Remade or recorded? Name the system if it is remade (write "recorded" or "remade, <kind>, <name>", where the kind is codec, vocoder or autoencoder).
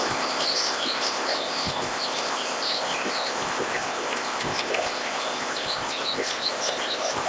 remade, codec, ZipCodec